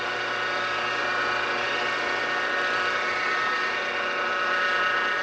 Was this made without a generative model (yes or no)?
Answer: yes